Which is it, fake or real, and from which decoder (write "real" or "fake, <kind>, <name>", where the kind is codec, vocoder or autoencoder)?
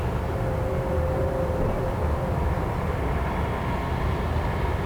real